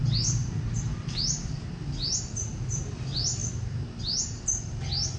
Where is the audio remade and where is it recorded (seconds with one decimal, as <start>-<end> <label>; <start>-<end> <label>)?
0.0-3.4 remade; 3.4-4.0 recorded; 4.0-5.2 remade